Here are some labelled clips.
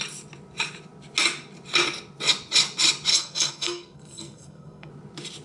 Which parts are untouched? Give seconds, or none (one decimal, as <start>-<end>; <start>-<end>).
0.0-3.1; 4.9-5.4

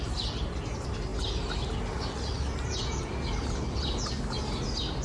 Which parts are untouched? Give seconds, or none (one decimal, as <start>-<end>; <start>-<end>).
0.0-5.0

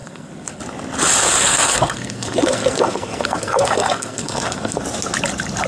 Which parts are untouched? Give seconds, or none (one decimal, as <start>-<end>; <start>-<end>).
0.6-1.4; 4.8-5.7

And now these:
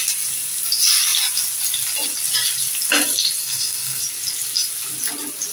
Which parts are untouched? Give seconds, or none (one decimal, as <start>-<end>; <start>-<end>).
0.0-3.4; 4.0-5.5

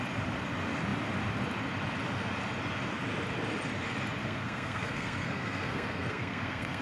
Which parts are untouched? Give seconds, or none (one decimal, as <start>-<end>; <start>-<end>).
0.0-4.2